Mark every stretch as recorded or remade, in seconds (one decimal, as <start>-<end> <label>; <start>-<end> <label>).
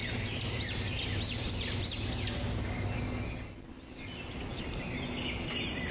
0.0-4.5 recorded; 4.5-5.0 remade; 5.0-5.9 recorded